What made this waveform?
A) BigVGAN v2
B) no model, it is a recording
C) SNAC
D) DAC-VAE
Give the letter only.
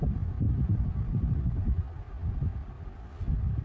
A